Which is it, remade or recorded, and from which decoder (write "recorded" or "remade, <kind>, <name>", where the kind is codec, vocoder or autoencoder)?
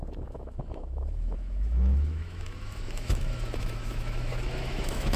remade, autoencoder, DAC-VAE